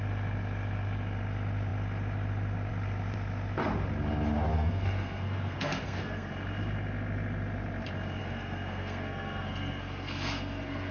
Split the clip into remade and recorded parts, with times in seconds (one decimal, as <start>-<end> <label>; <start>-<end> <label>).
0.0-4.5 recorded; 4.5-6.3 remade; 6.3-8.2 recorded; 8.2-10.9 remade